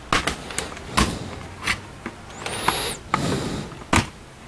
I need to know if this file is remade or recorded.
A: recorded